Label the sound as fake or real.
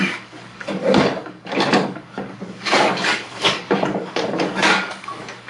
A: fake